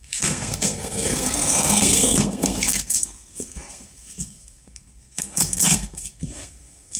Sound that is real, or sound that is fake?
fake